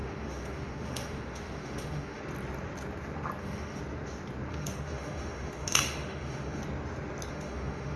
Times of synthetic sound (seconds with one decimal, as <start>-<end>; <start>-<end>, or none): 0.0-2.2; 3.4-3.8; 4.5-6.6; 7.3-8.0